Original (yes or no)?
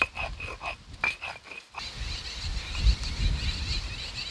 yes